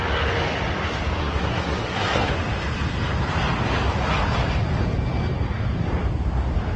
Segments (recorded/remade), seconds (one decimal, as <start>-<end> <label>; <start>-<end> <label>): 0.0-1.2 recorded; 1.2-2.3 remade; 2.3-6.8 recorded